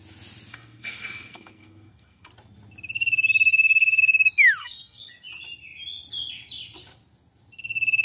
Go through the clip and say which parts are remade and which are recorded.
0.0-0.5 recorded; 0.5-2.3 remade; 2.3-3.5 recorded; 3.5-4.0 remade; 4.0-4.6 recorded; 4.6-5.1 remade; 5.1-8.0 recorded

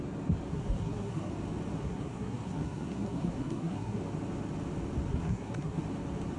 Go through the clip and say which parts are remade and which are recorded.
0.0-0.5 recorded; 0.5-1.3 remade; 1.3-1.8 recorded; 1.8-4.0 remade; 4.0-5.1 recorded; 5.1-5.8 remade; 5.8-6.4 recorded

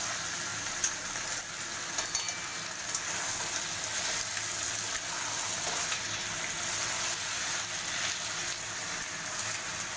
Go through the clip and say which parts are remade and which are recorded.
0.0-10.0 recorded

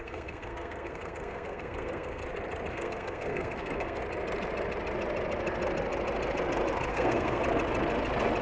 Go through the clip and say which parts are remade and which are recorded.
0.0-2.2 remade; 2.2-2.7 recorded; 2.7-4.0 remade; 4.0-6.9 recorded; 6.9-7.4 remade; 7.4-8.4 recorded